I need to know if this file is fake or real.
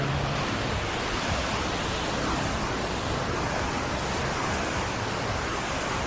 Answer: real